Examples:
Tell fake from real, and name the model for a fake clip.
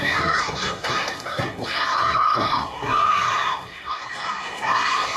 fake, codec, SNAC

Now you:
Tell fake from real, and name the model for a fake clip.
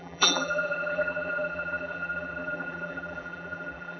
fake, vocoder, BigVGAN v2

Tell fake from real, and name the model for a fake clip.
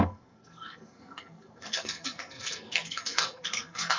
fake, codec, SNAC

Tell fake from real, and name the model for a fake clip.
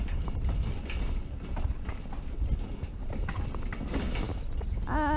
real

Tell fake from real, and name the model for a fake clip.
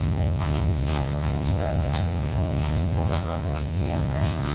fake, vocoder, Vocos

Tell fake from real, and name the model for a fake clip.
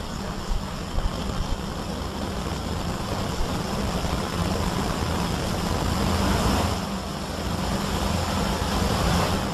fake, vocoder, BigVGAN v2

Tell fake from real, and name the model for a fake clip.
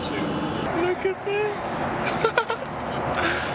real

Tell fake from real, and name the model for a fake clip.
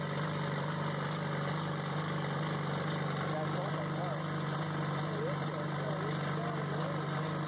real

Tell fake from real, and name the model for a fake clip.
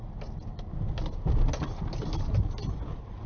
real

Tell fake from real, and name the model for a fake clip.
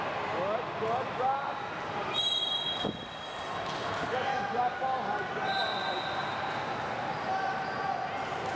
real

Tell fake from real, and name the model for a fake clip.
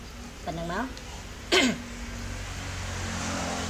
real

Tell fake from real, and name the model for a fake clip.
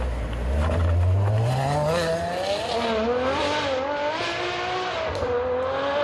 real